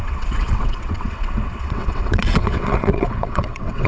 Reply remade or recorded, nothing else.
remade